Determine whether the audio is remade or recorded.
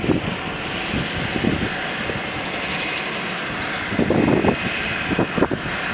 recorded